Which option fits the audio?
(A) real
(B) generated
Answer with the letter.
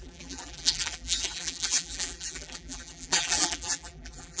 B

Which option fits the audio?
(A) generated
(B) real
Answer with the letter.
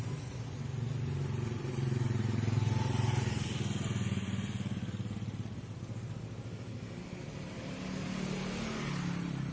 B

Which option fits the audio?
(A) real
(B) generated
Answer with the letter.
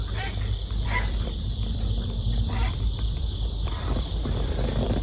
B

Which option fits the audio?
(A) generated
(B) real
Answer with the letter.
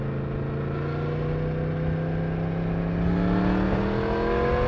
B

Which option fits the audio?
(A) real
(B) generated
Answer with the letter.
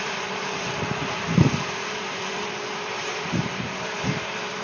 B